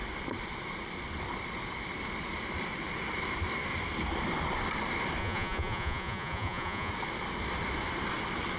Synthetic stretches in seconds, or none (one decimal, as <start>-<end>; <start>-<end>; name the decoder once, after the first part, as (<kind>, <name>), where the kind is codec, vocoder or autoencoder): 5.2-6.9 (vocoder, Vocos)